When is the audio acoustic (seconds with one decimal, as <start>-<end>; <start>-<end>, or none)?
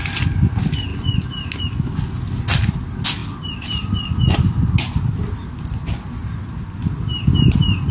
0.0-3.2; 4.1-6.2; 6.8-7.9